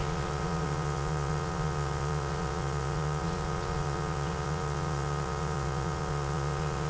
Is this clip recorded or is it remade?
remade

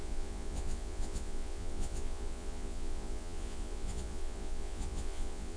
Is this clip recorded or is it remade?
remade